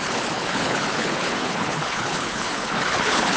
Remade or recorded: remade